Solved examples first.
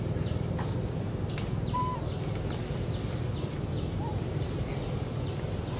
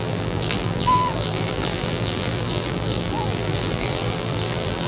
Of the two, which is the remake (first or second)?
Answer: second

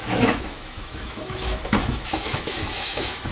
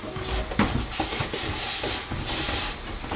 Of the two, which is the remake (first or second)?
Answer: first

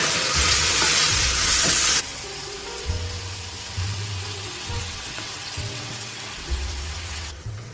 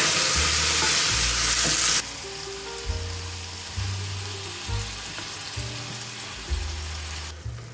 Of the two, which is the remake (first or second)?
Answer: first